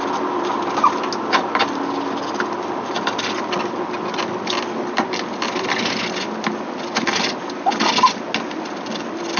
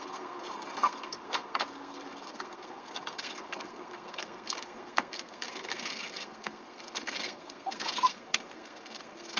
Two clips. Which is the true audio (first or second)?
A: first